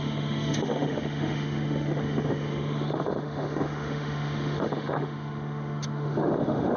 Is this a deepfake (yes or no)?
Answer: yes